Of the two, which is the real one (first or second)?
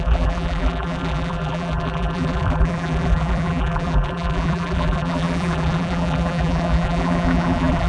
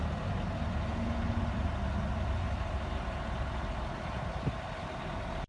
second